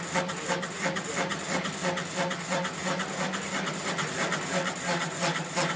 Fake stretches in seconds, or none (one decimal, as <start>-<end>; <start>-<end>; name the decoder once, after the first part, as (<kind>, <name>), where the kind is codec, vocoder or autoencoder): none